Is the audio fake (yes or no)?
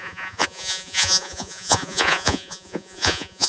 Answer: yes